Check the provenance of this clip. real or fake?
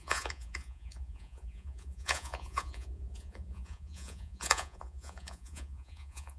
fake